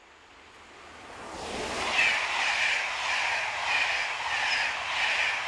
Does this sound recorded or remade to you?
recorded